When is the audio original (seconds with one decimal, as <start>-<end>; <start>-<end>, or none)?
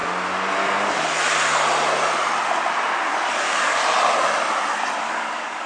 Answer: 0.0-3.3; 3.8-5.0